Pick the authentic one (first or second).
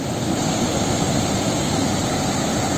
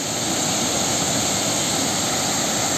second